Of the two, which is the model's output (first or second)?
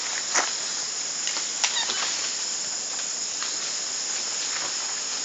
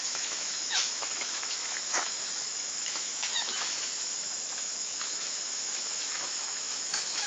second